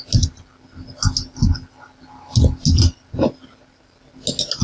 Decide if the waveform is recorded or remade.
recorded